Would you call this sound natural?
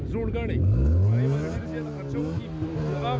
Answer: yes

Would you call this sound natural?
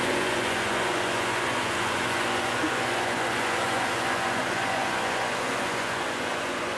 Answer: no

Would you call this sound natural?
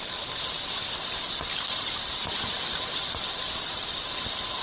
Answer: no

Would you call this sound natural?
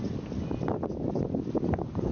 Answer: yes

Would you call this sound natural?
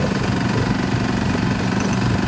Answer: no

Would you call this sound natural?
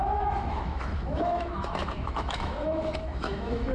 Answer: no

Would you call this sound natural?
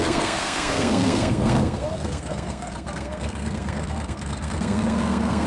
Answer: no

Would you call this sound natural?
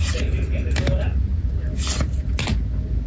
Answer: yes